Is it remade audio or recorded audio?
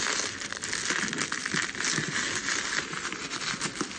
recorded